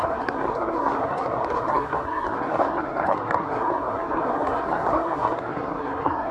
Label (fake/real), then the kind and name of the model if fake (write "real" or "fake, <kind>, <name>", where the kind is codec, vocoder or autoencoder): fake, codec, SNAC